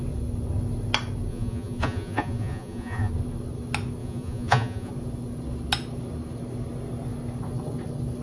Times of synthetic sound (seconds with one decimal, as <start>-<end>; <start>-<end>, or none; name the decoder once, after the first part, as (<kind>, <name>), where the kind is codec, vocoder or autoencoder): 1.3-3.1 (vocoder, Vocos); 4.0-4.9